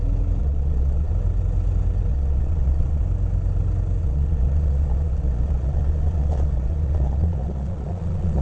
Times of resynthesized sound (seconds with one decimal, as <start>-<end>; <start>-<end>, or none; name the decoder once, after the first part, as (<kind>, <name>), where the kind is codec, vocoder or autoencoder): 0.4-1.1 (vocoder, Vocos); 2.1-3.0; 4.0-8.4